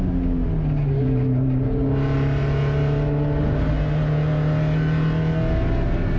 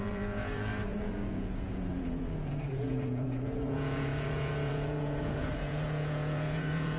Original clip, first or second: first